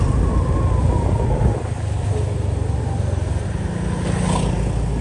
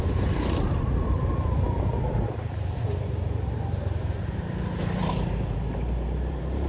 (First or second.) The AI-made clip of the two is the second